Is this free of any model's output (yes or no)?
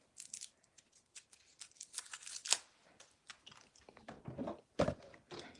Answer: no